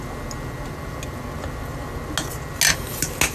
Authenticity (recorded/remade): recorded